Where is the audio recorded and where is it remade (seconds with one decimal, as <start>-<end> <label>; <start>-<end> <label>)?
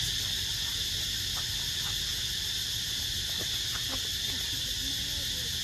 0.0-5.6 recorded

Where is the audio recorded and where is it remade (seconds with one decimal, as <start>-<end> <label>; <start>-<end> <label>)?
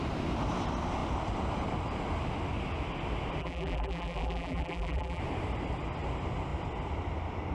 0.0-3.4 recorded; 3.4-5.2 remade; 5.2-7.5 recorded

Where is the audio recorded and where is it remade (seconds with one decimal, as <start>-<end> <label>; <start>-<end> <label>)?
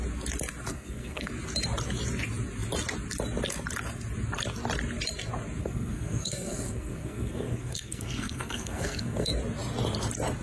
0.0-0.7 recorded; 0.7-1.3 remade; 1.3-5.6 recorded; 5.6-9.3 remade; 9.3-10.4 recorded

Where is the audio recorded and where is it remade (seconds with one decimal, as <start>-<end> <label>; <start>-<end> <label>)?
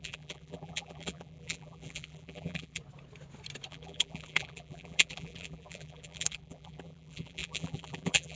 0.0-2.8 remade; 2.8-3.7 recorded; 3.7-8.4 remade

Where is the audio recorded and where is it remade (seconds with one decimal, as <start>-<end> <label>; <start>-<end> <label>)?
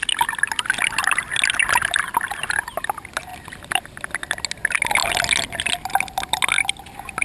0.0-3.3 recorded; 3.3-4.2 remade; 4.2-7.2 recorded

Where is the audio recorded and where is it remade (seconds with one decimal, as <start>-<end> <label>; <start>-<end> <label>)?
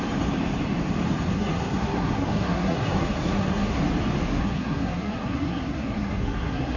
0.0-1.3 recorded; 1.3-3.8 remade; 3.8-4.4 recorded; 4.4-6.8 remade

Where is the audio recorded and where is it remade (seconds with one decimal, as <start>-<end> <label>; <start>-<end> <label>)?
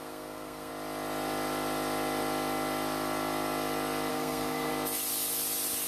0.0-0.7 remade; 0.7-4.1 recorded; 4.1-4.7 remade; 4.7-5.9 recorded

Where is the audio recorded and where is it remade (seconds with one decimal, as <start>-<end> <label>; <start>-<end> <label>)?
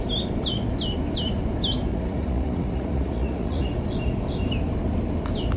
0.0-1.9 recorded; 1.9-3.7 remade; 3.7-5.6 recorded